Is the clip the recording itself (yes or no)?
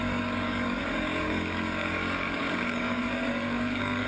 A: no